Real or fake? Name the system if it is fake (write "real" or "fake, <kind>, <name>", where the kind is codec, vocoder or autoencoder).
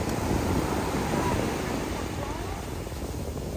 real